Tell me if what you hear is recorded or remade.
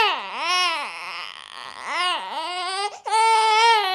recorded